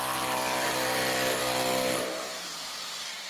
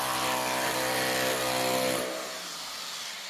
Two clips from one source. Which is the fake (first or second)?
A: first